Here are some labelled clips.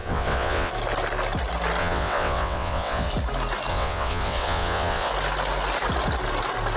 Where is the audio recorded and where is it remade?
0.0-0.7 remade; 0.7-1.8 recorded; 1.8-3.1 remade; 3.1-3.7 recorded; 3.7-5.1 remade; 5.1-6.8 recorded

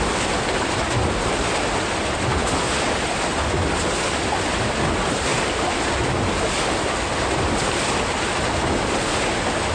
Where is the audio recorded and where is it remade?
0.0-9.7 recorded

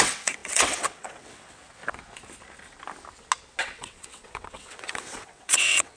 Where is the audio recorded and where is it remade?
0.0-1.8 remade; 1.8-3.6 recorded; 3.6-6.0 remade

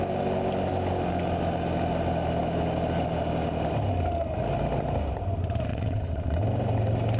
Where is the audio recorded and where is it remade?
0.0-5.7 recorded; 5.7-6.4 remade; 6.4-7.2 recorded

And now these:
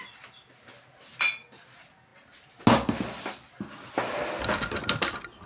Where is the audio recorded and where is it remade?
0.0-5.5 recorded